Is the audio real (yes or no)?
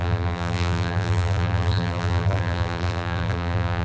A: no